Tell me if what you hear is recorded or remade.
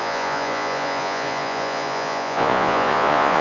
remade